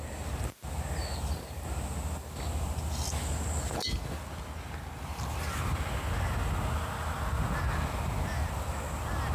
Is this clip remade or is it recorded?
recorded